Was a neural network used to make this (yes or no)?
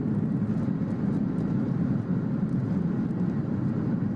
no